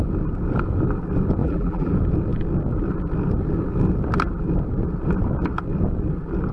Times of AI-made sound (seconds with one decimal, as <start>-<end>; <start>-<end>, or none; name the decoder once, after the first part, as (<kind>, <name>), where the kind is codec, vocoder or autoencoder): 1.4-1.9 (vocoder, BigVGAN v2)